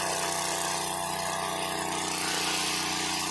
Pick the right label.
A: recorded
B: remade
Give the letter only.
A